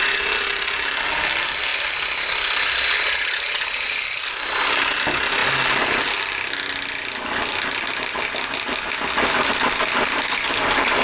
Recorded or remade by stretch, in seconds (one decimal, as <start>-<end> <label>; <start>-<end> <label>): 0.0-11.0 recorded